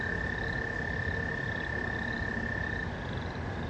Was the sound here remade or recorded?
recorded